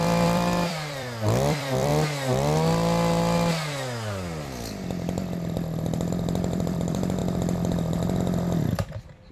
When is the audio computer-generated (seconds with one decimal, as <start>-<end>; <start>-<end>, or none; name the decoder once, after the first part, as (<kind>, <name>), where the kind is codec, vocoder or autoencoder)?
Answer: 0.0-1.9 (vocoder, BigVGAN v2); 6.3-7.2